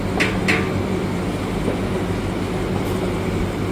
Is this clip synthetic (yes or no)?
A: no